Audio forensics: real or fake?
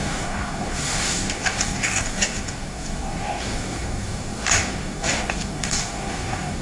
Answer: fake